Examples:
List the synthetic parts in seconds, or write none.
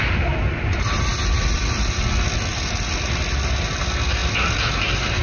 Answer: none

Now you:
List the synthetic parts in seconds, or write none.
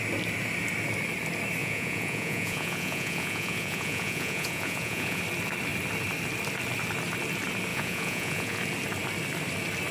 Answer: 1.6-5.2 (vocoder, Vocos); 7.7-8.6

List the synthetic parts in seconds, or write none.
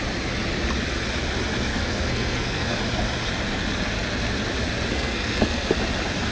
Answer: 1.7-2.8 (codec, SNAC); 4.9-5.7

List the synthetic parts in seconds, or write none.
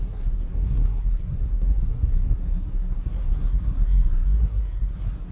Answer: 0.0-5.3 (codec, SNAC)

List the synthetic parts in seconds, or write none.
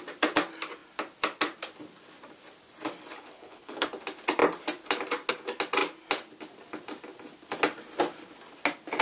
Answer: 3.1-3.9 (codec, HILCodec)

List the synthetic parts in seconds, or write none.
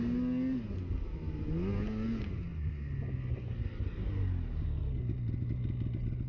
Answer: none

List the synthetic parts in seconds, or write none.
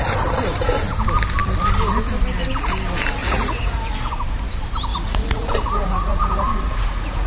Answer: 3.2-4.1 (vocoder, Vocos); 4.9-7.3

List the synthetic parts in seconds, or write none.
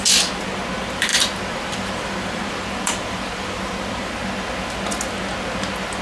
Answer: 1.1-3.9 (vocoder, BigVGAN v2)